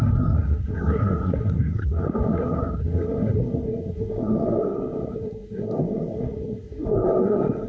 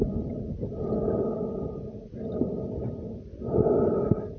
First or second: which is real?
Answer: second